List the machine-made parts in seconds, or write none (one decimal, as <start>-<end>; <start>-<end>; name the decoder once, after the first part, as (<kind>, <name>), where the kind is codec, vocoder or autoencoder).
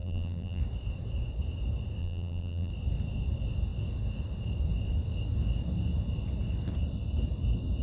0.0-0.6 (vocoder, BigVGAN v2); 2.0-2.7